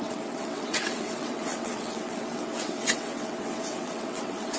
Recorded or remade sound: remade